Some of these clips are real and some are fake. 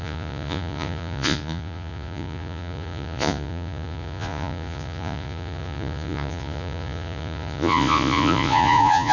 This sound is fake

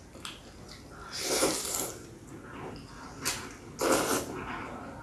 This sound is real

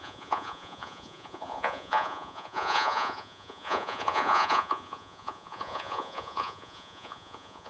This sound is fake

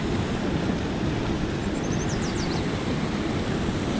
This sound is real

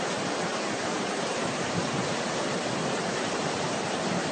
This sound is fake